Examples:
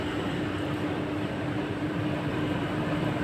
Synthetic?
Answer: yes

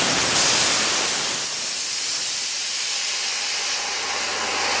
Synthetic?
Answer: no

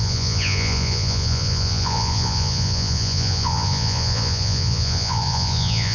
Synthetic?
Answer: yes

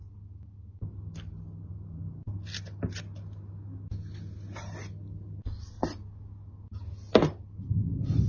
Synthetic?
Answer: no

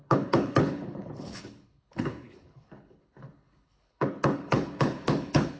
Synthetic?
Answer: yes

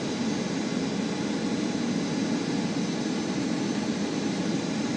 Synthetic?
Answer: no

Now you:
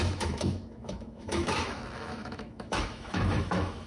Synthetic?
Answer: yes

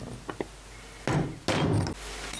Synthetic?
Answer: no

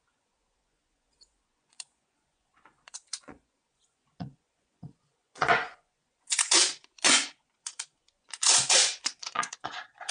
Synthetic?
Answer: yes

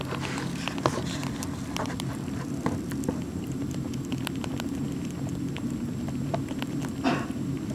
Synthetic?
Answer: yes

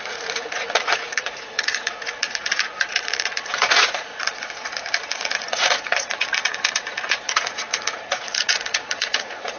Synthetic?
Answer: yes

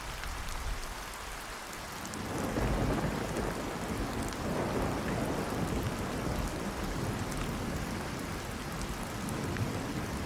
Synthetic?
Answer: no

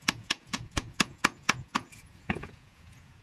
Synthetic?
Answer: yes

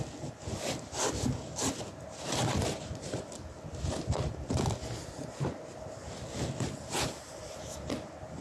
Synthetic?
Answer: no